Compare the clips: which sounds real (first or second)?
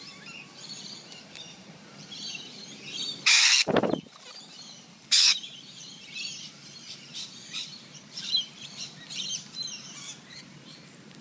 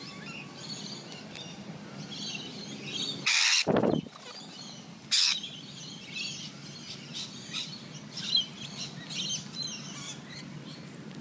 second